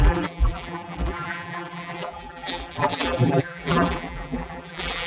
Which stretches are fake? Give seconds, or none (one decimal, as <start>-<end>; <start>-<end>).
0.0-5.1